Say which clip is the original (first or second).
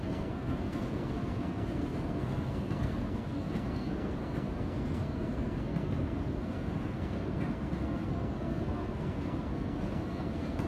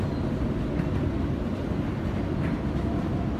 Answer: second